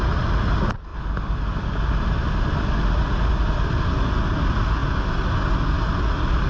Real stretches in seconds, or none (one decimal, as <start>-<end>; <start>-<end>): 0.0-6.5